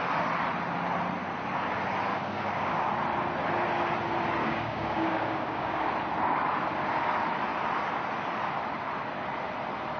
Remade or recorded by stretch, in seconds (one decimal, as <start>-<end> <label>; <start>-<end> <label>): 0.0-2.1 recorded; 2.1-2.9 remade; 2.9-4.4 recorded; 4.4-5.9 remade; 5.9-10.0 recorded